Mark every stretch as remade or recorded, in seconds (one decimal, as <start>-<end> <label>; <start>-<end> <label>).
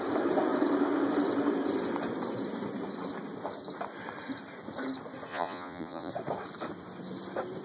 0.0-5.3 recorded; 5.3-6.1 remade; 6.1-7.6 recorded